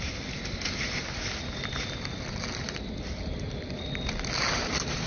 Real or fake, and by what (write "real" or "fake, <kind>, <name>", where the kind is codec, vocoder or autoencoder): real